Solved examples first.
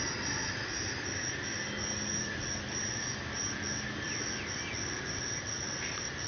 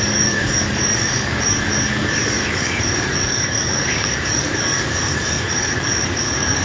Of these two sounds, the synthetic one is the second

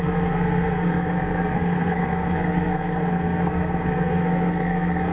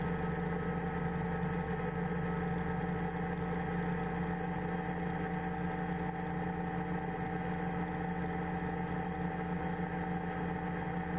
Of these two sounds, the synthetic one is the first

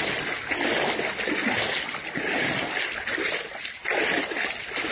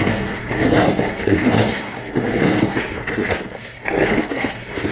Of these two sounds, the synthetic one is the second